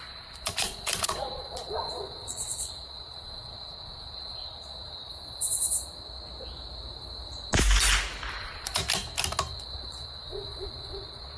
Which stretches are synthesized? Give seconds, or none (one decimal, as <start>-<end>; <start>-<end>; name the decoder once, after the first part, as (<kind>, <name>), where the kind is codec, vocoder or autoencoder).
0.0-5.1 (vocoder, Vocos); 8.4-8.8; 9.5-11.4

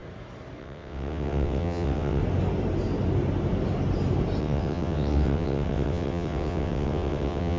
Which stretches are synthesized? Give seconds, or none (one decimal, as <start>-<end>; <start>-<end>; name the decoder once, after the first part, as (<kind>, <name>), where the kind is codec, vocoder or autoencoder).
0.6-2.2 (vocoder, WaveNeXt); 4.4-7.6

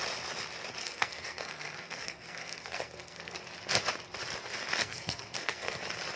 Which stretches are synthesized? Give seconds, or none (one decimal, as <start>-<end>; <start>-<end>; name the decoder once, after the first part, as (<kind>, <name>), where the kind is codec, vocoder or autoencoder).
0.8-3.4 (codec, SNAC); 4.8-5.8